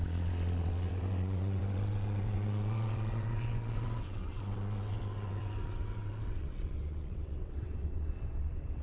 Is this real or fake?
fake